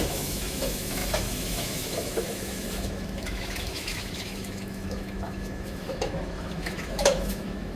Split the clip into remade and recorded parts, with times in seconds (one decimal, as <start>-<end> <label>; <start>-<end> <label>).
0.0-7.8 remade